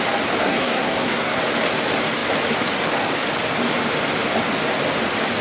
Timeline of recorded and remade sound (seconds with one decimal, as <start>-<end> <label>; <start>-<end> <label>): 0.0-0.4 recorded; 0.4-1.4 remade; 1.4-5.4 recorded